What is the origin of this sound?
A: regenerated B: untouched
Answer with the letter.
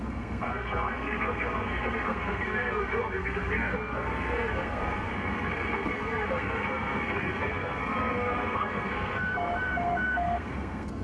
A